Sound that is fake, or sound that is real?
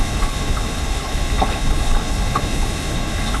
fake